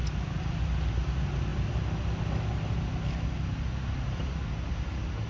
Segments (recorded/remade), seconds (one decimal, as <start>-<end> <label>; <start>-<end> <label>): 0.0-5.3 recorded